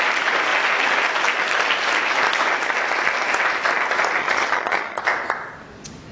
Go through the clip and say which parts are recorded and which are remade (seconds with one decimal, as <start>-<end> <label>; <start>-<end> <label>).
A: 0.0-4.2 recorded; 4.2-5.0 remade; 5.0-6.1 recorded

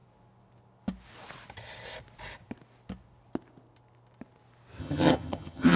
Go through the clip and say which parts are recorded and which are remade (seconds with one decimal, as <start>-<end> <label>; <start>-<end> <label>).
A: 0.0-4.8 recorded; 4.8-5.8 remade

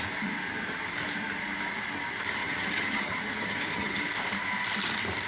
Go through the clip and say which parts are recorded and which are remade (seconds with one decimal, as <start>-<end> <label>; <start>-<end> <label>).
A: 0.0-2.4 recorded; 2.4-4.0 remade; 4.0-5.3 recorded

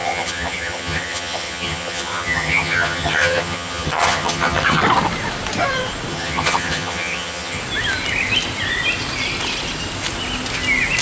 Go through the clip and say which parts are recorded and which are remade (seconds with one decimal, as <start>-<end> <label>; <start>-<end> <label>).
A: 0.0-4.8 remade; 4.8-6.1 recorded; 6.1-7.6 remade; 7.6-11.0 recorded

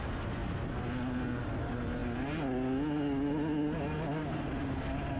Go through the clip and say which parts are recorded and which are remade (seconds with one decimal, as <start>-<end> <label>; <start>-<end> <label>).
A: 0.0-5.2 recorded